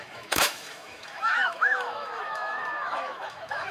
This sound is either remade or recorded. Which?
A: remade